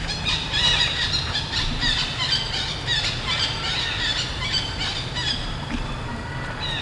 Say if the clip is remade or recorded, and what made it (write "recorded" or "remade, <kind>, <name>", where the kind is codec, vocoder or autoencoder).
recorded